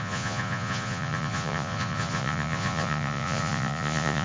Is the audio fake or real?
fake